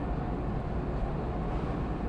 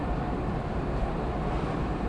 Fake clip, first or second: second